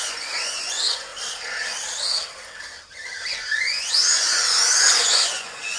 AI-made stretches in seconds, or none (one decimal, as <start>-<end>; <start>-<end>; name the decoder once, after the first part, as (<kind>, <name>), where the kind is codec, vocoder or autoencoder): 0.0-1.1 (vocoder, Vocos); 3.3-5.8